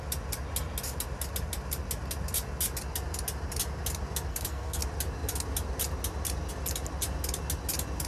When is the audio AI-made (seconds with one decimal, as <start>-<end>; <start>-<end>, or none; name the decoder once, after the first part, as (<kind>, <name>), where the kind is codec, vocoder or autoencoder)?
4.3-4.8 (codec, SNAC)

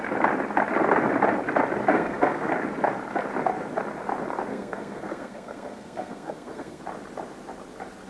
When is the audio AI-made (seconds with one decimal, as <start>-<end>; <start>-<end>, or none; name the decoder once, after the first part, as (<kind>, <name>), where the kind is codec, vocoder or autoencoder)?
1.9-2.5 (codec, SNAC); 4.5-6.8

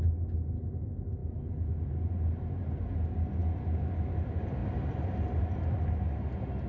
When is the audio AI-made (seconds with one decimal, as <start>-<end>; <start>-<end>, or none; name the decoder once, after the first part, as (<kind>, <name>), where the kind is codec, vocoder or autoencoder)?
none